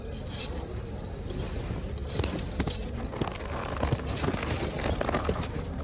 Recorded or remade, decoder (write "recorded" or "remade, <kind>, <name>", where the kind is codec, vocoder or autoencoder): recorded